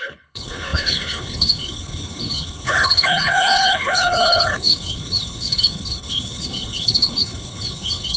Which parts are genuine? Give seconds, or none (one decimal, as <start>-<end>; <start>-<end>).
none